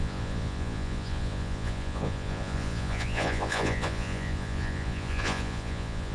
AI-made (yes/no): yes